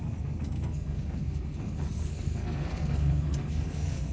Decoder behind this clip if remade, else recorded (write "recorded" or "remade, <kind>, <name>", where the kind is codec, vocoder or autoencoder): remade, codec, SNAC